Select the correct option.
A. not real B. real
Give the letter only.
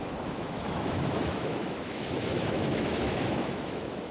A